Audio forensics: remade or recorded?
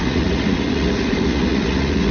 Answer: remade